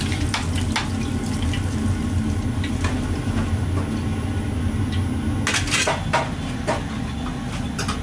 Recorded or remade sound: recorded